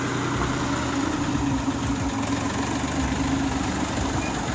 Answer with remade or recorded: recorded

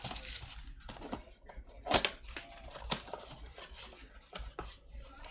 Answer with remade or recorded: recorded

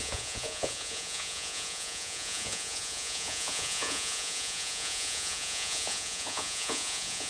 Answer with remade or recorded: remade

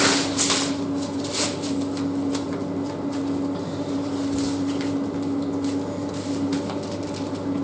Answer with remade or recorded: recorded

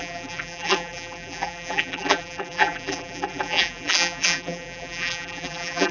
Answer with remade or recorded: remade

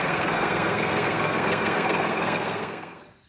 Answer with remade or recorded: remade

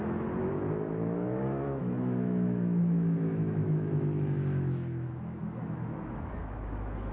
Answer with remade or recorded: remade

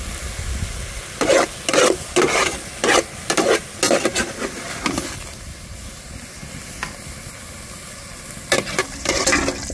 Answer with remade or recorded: recorded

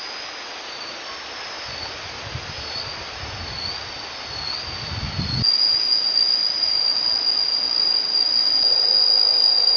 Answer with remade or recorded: recorded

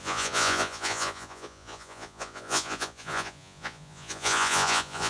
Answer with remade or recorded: remade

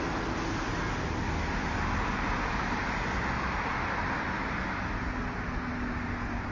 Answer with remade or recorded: recorded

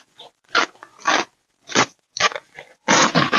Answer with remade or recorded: remade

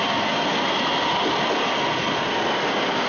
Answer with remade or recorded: recorded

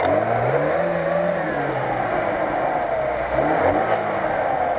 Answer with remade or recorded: recorded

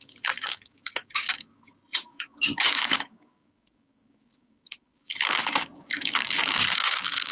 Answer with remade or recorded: remade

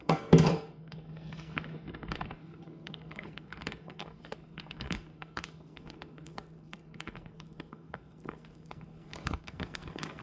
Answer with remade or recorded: remade